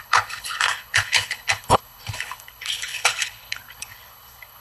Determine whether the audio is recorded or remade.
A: remade